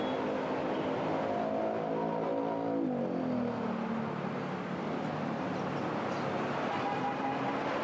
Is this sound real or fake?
real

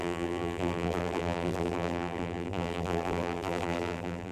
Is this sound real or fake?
fake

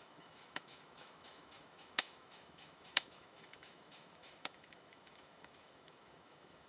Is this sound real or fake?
fake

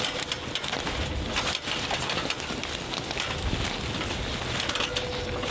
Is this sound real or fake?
real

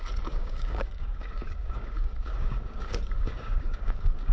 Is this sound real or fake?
fake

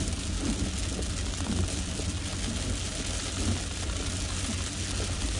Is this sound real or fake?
real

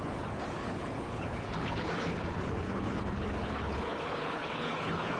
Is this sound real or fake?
fake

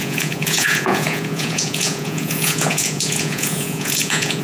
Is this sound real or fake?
fake